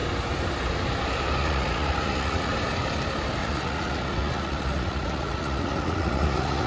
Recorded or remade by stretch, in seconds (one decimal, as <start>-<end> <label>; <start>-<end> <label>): 0.0-1.4 recorded; 1.4-2.5 remade; 2.5-3.4 recorded; 3.4-6.7 remade